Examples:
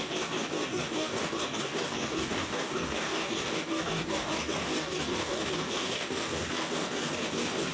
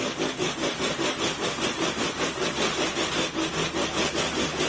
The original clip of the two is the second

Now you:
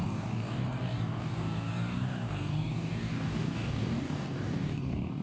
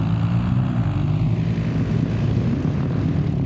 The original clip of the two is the second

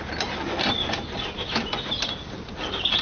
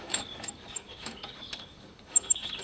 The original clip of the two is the first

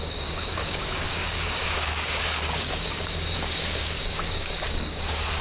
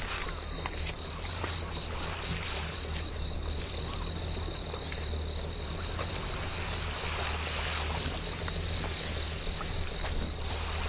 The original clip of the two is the second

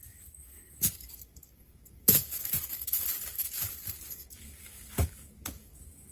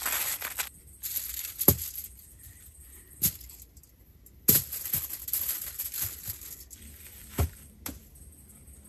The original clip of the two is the second